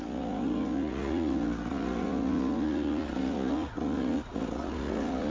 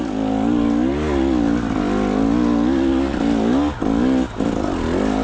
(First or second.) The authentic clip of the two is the second